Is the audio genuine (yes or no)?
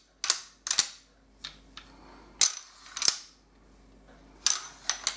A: yes